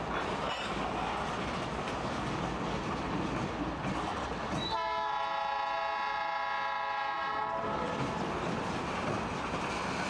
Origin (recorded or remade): recorded